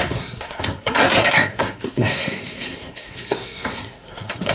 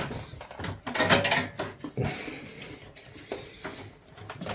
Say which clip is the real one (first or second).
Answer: second